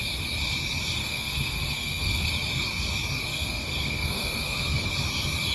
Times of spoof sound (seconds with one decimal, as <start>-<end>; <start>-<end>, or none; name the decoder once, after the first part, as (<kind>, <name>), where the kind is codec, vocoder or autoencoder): 1.0-2.3 (codec, SNAC); 3.3-4.9